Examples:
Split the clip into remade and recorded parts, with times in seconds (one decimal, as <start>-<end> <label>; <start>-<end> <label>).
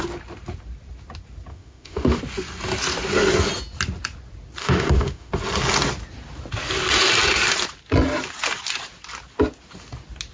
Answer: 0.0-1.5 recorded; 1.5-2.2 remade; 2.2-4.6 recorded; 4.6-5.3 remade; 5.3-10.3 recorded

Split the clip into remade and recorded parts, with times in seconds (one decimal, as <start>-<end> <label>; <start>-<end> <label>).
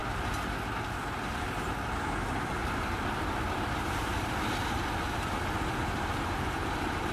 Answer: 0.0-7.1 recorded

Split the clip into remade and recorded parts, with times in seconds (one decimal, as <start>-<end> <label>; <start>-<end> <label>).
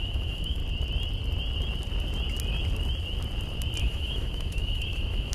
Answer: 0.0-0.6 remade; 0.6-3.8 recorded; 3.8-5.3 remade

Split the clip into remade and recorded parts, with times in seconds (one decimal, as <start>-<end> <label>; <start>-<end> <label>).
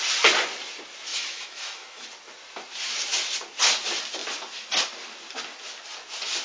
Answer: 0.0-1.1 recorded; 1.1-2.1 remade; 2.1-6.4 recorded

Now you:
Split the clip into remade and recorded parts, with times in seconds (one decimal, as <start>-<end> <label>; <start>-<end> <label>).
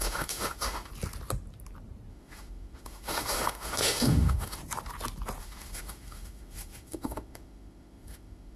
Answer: 0.0-0.9 remade; 0.9-2.1 recorded; 2.1-4.6 remade; 4.6-5.4 recorded; 5.4-8.6 remade